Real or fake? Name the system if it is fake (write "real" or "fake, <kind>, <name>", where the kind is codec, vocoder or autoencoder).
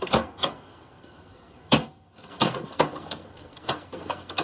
fake, codec, SNAC